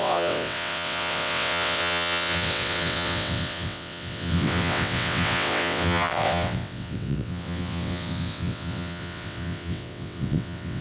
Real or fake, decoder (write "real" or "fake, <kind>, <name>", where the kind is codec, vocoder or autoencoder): fake, vocoder, WaveNeXt